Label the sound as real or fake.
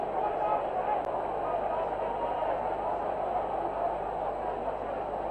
real